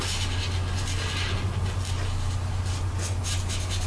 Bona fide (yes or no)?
yes